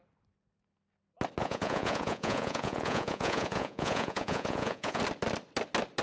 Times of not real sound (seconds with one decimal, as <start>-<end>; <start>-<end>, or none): 1.4-5.0